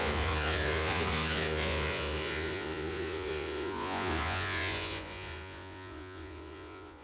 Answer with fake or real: fake